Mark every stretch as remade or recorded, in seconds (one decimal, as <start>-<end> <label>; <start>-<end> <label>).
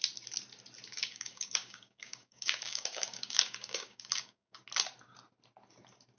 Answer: 0.0-0.9 recorded; 0.9-4.6 remade; 4.6-6.2 recorded